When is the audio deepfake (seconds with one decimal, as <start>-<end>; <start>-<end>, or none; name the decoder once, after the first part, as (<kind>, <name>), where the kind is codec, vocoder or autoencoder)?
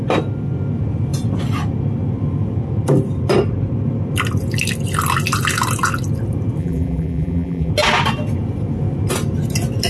6.6-7.7 (vocoder, BigVGAN v2)